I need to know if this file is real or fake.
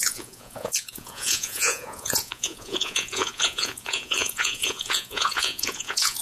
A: fake